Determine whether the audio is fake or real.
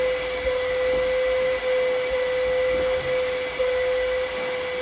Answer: real